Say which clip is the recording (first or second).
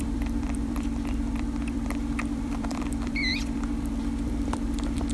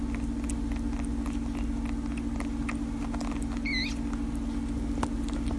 second